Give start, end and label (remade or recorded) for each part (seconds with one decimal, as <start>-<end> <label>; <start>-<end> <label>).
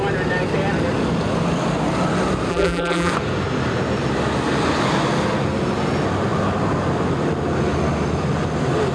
0.0-2.5 recorded; 2.5-3.1 remade; 3.1-8.9 recorded